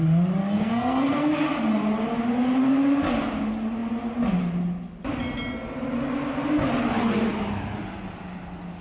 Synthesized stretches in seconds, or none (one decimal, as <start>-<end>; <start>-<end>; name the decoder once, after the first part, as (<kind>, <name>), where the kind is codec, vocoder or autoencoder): 0.4-1.3 (codec, SNAC)